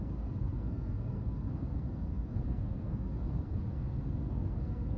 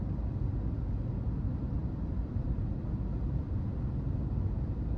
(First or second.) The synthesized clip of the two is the first